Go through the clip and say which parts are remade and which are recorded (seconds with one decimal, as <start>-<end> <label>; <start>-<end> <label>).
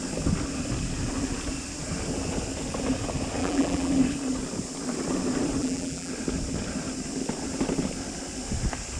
0.0-3.4 recorded; 3.4-3.9 remade; 3.9-5.6 recorded; 5.6-6.1 remade; 6.1-9.0 recorded